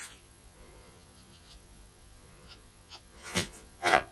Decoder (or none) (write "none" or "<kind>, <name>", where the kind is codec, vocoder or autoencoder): vocoder, Vocos